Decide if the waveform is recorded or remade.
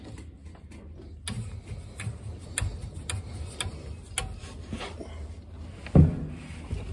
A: recorded